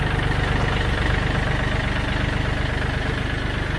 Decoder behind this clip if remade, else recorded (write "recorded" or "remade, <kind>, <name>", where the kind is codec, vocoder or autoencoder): recorded